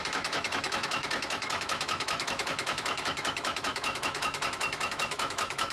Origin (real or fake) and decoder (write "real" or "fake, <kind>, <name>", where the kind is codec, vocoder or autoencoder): fake, autoencoder, DAC-VAE